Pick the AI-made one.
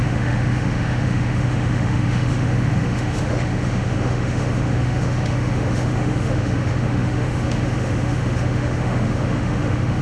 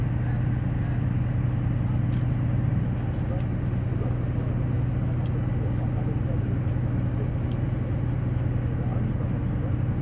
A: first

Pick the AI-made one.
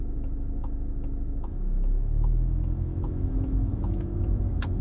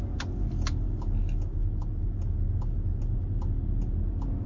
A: first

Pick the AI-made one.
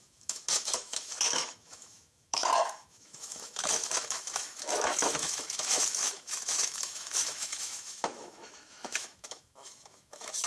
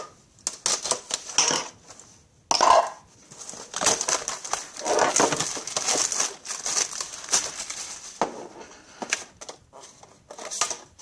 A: first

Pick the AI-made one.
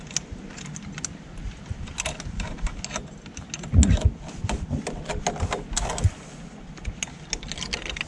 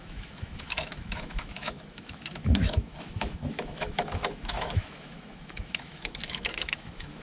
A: second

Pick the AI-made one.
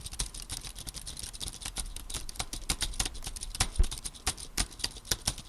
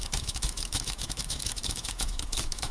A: second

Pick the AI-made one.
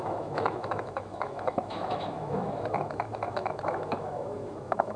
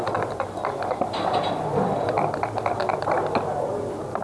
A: first